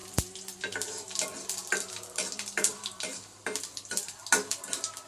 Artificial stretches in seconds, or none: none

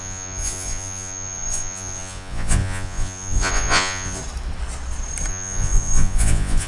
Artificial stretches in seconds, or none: 0.0-4.2; 5.3-6.7

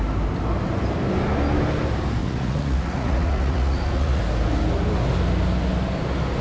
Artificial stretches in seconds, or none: 2.2-4.2

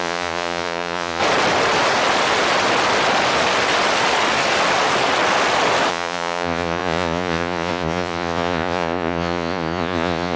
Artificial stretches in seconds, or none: 0.0-1.2; 5.9-10.4

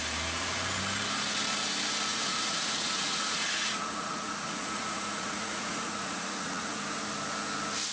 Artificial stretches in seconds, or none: 2.1-6.8